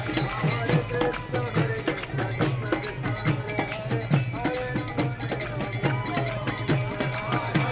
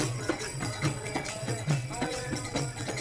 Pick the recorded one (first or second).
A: first